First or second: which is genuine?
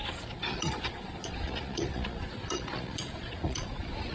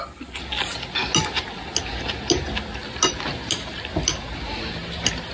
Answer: second